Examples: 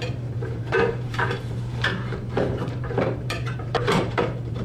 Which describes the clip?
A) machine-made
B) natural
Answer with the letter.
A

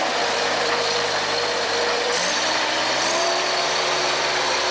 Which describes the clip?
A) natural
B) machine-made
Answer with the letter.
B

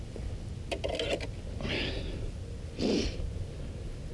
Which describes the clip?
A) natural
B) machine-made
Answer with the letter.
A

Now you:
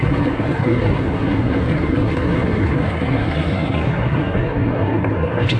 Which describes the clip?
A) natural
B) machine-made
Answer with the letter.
B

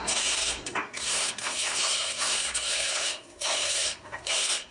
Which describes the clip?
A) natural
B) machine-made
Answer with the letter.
B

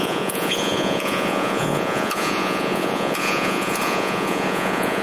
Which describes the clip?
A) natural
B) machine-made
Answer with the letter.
B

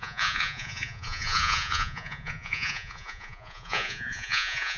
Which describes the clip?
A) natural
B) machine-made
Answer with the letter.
B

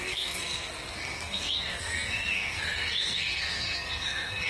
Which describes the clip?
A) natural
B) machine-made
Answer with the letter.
B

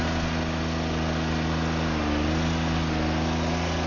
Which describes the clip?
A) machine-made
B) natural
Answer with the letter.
B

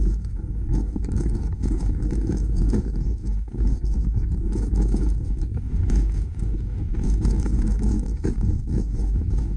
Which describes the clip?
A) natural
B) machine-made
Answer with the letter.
B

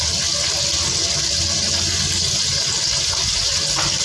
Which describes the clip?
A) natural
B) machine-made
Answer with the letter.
A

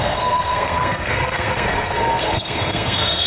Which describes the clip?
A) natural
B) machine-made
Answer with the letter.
B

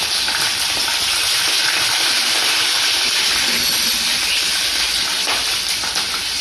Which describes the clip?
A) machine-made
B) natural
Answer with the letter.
B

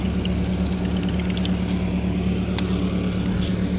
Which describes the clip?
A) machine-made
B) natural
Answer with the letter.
B